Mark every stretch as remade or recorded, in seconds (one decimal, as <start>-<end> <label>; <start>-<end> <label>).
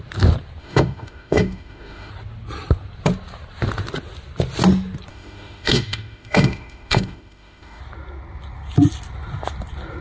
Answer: 0.0-0.6 recorded; 0.6-2.1 remade; 2.1-5.1 recorded; 5.1-7.8 remade; 7.8-10.0 recorded